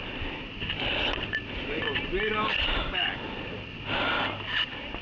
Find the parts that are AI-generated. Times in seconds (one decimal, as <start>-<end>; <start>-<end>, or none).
none